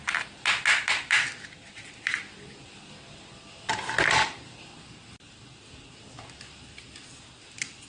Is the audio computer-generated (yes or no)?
no